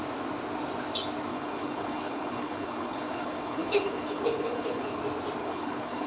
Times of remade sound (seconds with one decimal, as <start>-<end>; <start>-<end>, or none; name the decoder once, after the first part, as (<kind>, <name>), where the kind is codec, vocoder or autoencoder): 1.3-5.0 (codec, HILCodec); 5.4-6.1